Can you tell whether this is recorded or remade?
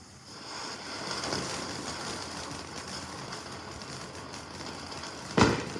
recorded